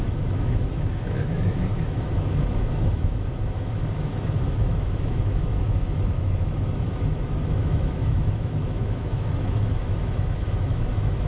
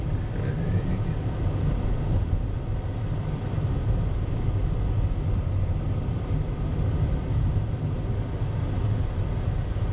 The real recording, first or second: second